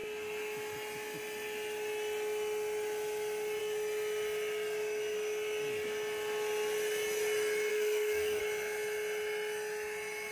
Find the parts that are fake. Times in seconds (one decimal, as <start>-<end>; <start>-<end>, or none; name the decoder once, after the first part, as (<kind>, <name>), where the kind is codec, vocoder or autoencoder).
7.7-8.4 (codec, SNAC)